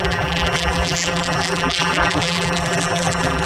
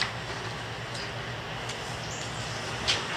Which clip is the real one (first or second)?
second